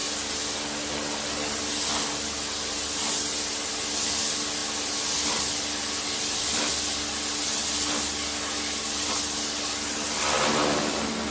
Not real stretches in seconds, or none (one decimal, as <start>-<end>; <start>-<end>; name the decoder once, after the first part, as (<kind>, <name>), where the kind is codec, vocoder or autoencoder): none